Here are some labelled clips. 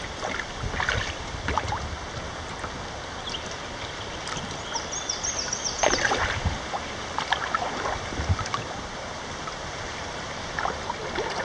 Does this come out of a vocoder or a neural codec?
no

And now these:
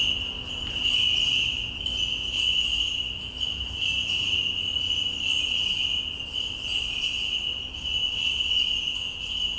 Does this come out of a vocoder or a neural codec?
no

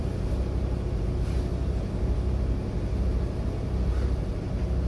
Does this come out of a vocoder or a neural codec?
no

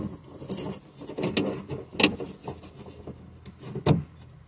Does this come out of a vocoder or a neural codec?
no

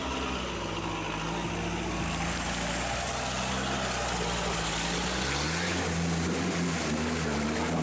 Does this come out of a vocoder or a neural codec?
no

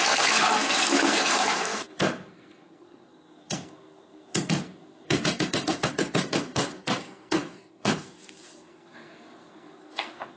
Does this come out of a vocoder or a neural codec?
yes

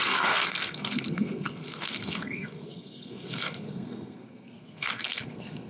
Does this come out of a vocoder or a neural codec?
yes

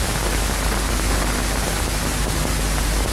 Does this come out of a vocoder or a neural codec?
no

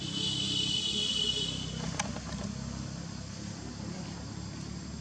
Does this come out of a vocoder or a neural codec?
no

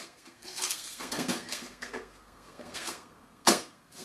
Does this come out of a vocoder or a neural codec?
yes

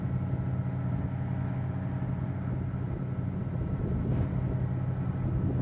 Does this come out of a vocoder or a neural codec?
no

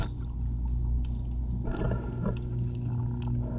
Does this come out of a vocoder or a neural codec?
no